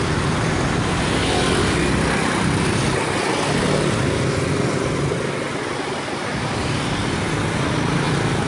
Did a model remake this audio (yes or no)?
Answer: no